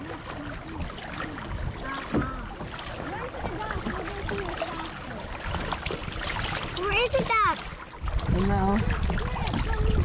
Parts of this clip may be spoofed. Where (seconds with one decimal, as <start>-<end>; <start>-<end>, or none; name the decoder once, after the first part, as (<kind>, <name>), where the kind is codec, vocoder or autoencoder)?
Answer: none